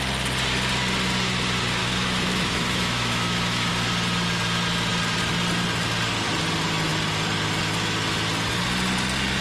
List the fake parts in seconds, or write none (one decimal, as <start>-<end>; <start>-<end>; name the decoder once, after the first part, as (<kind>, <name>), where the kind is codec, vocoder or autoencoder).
1.8-3.7 (autoencoder, DAC-VAE)